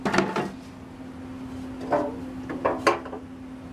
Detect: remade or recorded recorded